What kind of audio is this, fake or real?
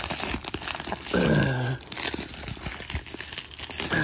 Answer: real